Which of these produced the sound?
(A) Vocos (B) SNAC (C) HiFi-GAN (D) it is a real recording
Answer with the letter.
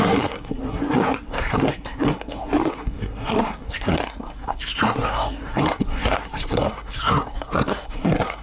B